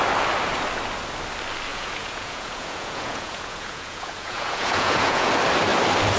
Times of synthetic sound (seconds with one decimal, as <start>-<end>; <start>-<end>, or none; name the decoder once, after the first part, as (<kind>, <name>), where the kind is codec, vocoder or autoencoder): 1.7-5.3 (vocoder, Vocos)